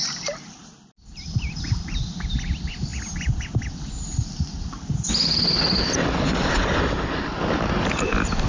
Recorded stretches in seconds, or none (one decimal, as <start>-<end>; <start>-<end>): 0.0-8.5